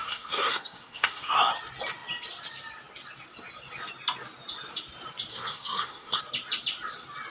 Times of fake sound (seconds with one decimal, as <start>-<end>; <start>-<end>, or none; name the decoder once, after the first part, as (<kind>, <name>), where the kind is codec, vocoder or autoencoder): 0.0-1.5 (codec, SNAC); 5.3-6.2